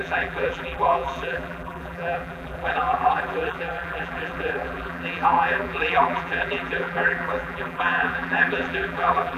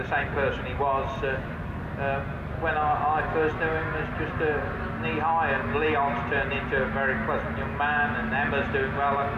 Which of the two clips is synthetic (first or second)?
first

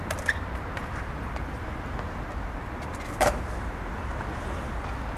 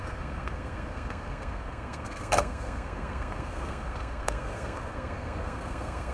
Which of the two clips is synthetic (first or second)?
second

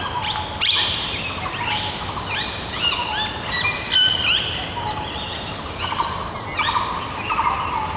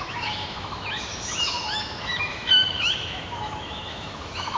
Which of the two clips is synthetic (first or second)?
second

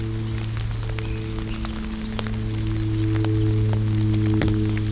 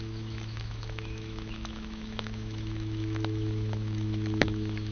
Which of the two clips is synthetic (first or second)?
second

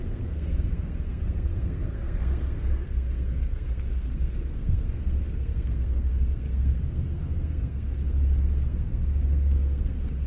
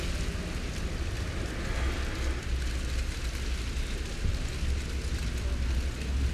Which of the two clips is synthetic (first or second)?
first